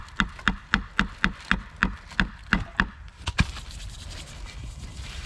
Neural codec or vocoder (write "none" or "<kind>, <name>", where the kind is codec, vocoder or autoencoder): none